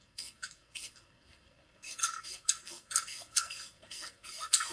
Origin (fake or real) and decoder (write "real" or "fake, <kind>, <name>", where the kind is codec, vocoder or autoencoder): fake, codec, SNAC